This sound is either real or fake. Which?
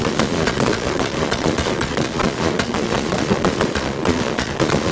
fake